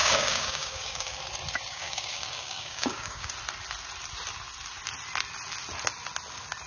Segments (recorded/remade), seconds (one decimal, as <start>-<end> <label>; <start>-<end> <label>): 0.0-1.2 remade; 1.2-1.7 recorded; 1.7-3.3 remade; 3.3-6.7 recorded